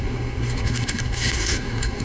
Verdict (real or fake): fake